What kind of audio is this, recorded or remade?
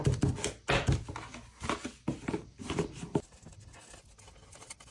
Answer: recorded